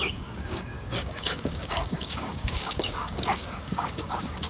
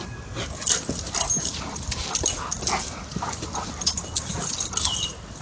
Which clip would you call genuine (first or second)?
second